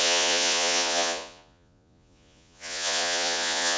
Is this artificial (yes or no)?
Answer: yes